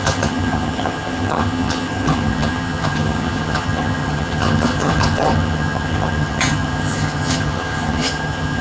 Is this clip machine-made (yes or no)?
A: yes